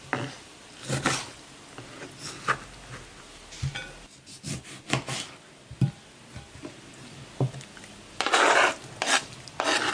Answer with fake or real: real